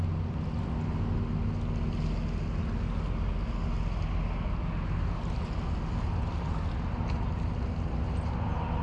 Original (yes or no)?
yes